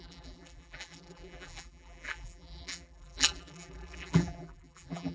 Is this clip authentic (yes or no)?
no